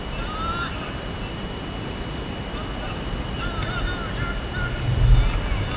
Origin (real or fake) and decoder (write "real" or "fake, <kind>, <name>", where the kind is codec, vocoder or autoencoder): real